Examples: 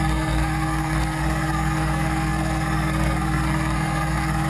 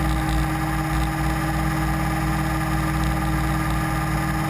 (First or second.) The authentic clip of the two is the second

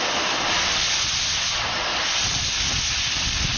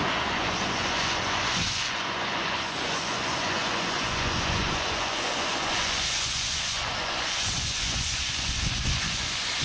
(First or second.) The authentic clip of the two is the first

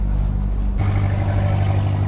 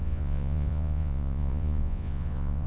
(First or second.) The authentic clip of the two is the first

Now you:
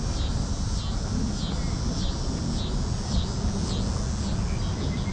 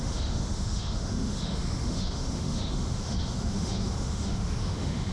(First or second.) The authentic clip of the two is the first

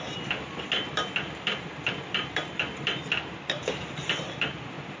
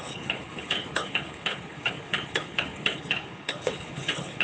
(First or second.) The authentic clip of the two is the first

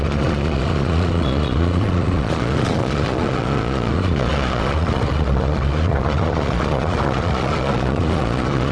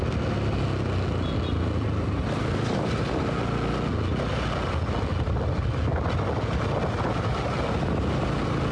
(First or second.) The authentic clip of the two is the second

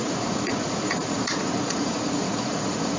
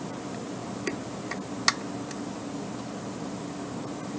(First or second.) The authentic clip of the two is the second